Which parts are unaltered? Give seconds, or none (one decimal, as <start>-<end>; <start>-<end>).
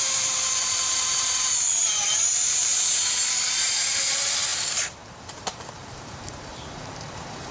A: 2.7-3.9